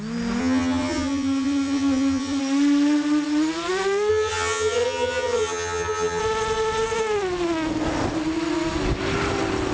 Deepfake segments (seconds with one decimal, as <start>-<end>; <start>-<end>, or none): 0.4-2.4; 4.1-6.2

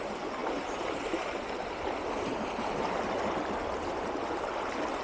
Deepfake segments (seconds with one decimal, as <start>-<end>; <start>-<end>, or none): none

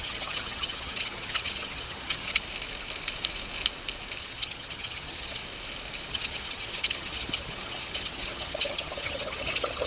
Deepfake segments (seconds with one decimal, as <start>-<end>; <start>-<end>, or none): 0.0-2.4; 4.2-5.4; 6.1-9.9